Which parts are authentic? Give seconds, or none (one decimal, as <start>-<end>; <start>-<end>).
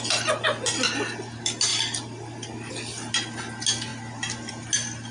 0.0-5.1